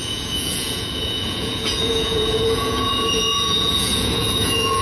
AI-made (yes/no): yes